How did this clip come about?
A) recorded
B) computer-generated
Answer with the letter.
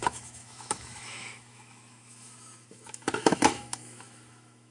B